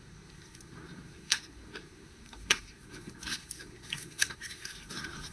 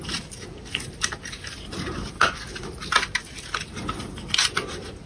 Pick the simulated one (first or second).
first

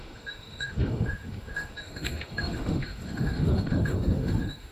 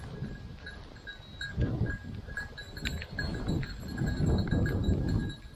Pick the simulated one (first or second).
first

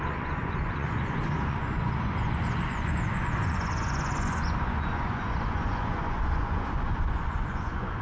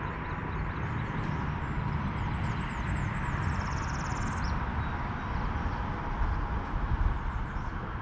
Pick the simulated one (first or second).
first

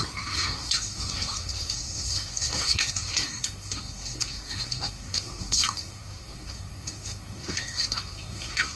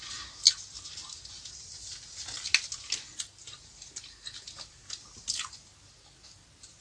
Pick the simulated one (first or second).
first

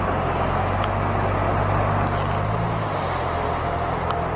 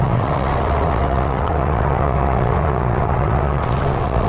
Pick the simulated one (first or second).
second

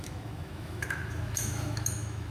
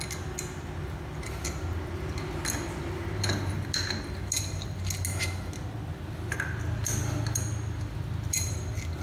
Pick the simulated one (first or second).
first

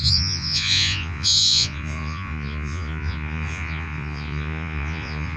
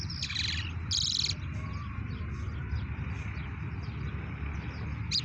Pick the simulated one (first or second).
first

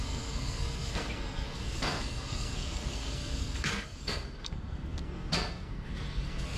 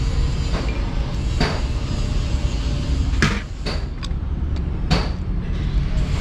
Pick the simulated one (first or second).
first